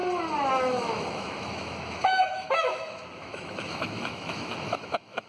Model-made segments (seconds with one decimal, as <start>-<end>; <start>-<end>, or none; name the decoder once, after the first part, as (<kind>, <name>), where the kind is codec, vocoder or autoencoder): 0.5-5.3 (autoencoder, DAC-VAE)